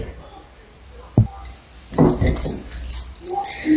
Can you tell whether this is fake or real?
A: real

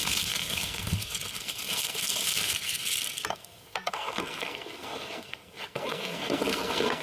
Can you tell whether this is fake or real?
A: fake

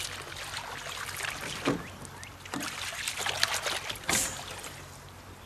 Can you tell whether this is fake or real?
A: real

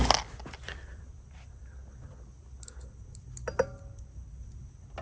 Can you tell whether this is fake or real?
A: real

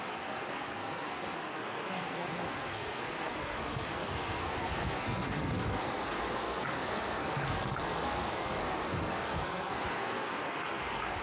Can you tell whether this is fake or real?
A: fake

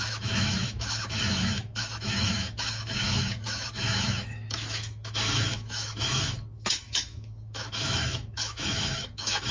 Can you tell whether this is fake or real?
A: fake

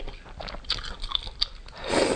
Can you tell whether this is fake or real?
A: real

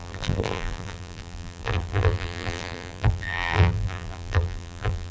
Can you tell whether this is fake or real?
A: fake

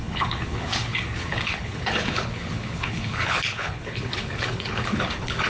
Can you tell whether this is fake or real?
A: fake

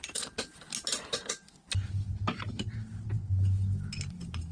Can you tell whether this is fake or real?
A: real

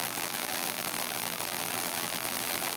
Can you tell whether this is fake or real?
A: fake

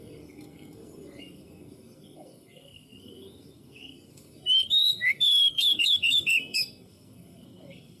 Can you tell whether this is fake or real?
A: fake